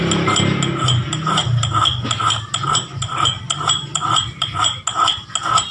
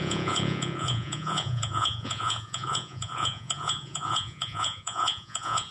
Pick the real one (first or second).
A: first